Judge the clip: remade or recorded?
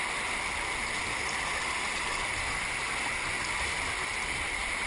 recorded